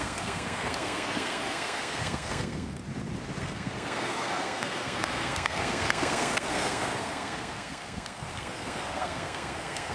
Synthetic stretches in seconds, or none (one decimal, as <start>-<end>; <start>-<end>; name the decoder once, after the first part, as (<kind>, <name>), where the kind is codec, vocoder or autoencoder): 0.0-2.8 (codec, SNAC); 3.4-9.9

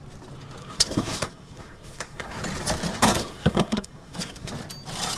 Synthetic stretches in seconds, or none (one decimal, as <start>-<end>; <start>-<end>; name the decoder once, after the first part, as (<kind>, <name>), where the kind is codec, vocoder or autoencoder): 0.6-2.4 (codec, SNAC); 2.9-4.5

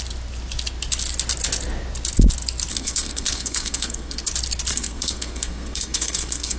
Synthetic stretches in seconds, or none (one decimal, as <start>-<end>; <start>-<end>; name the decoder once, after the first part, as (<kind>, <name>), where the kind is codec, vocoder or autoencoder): 2.7-4.3 (codec, SNAC); 4.7-6.6

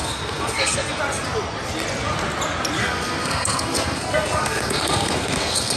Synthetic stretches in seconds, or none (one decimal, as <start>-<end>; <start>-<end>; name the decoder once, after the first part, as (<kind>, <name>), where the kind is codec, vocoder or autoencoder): 0.0-1.0 (codec, SNAC); 2.8-5.8